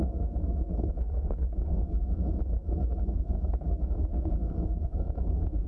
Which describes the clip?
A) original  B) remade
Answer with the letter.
B